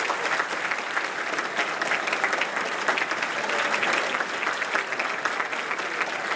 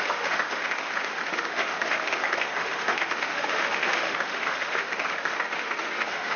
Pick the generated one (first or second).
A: second